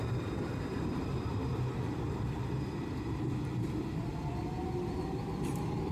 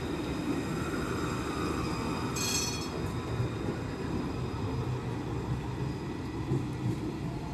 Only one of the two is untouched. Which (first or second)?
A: second